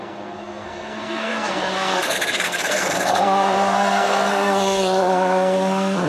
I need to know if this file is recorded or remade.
remade